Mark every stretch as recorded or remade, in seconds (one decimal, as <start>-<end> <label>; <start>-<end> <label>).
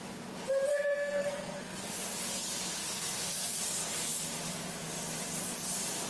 0.0-0.7 recorded; 0.7-2.2 remade; 2.2-2.8 recorded; 2.8-3.6 remade; 3.6-6.1 recorded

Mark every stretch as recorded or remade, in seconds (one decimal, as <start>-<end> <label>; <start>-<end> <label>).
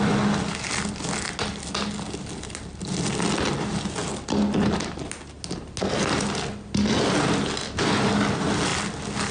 0.0-9.3 recorded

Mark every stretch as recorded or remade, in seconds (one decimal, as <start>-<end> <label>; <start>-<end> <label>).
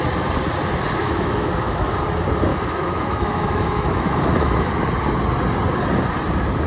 0.0-1.0 recorded; 1.0-1.9 remade; 1.9-2.5 recorded; 2.5-4.7 remade; 4.7-6.7 recorded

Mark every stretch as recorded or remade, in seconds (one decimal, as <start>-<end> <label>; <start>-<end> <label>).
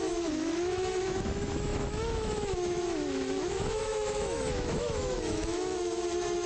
0.0-6.5 remade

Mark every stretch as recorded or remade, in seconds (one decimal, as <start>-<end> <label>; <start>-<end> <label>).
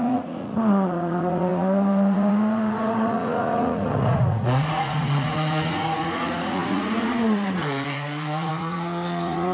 0.0-9.5 remade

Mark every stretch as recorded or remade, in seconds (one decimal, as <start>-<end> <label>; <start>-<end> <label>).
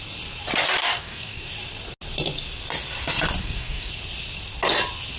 0.0-0.8 recorded; 0.8-1.5 remade; 1.5-3.4 recorded; 3.4-3.9 remade; 3.9-5.2 recorded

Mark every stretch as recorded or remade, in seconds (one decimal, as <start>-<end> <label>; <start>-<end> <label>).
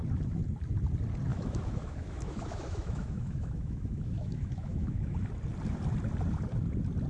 0.0-1.3 recorded; 1.3-5.3 remade; 5.3-7.1 recorded